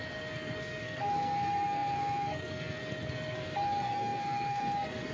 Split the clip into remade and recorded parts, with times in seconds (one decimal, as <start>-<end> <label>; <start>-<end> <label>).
0.0-5.1 remade